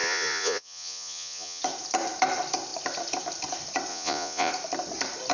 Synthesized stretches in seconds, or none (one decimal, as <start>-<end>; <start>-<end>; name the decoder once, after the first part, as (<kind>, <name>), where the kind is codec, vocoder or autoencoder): 0.0-1.6 (vocoder, Vocos); 3.9-4.5